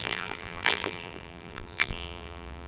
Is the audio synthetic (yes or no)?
yes